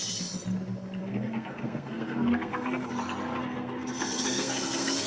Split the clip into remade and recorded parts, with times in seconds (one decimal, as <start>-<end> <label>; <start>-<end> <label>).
0.0-1.0 recorded; 1.0-2.9 remade; 2.9-3.4 recorded; 3.4-5.1 remade